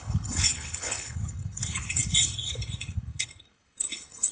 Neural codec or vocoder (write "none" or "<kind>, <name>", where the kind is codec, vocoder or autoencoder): codec, HILCodec